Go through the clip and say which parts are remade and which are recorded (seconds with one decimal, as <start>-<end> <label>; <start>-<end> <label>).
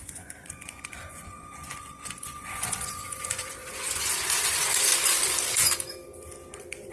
0.0-4.9 remade; 4.9-6.9 recorded